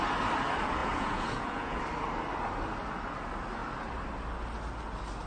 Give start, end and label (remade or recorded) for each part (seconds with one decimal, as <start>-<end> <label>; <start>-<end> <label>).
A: 0.0-0.8 recorded; 0.8-1.8 remade; 1.8-5.3 recorded